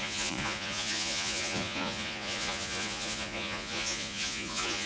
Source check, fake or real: fake